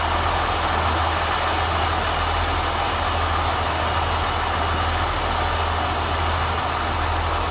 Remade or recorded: recorded